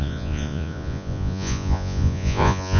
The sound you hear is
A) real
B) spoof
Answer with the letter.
B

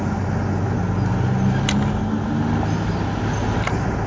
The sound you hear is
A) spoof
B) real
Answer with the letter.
B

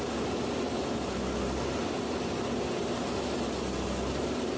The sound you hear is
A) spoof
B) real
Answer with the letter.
B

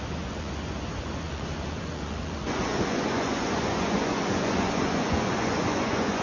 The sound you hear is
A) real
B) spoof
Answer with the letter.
B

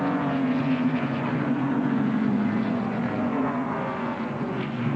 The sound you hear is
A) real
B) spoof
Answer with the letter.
B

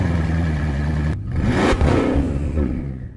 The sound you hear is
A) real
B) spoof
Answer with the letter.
B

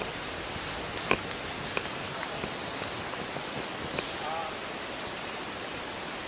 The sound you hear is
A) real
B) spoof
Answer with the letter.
A